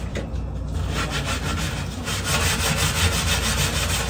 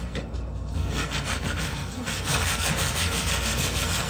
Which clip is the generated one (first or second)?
second